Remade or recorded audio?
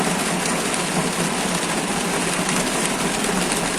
recorded